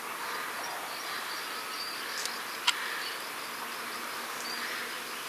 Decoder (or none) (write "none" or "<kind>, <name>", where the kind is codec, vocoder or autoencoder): none